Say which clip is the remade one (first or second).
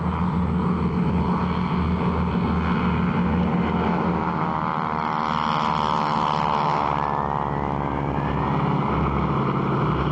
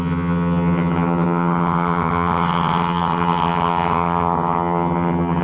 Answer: second